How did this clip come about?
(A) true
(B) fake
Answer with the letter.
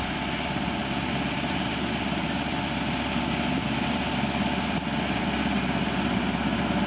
A